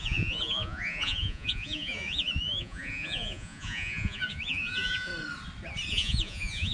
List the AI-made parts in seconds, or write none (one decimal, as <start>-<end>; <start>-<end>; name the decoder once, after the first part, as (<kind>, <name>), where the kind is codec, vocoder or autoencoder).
0.0-5.1 (vocoder, Vocos); 5.9-6.7